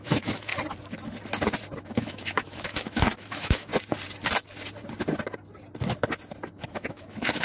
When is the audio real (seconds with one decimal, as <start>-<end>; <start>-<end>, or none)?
0.5-1.8; 3.7-6.7